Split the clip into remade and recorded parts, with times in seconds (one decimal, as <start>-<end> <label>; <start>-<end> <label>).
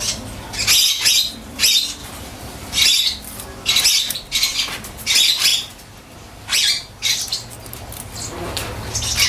0.0-2.0 recorded; 2.0-2.8 remade; 2.8-5.5 recorded; 5.5-7.1 remade; 7.1-9.3 recorded